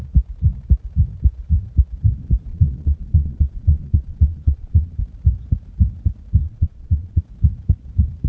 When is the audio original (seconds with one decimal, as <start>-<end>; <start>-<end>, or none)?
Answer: 0.0-2.5; 5.0-6.4; 7.2-8.3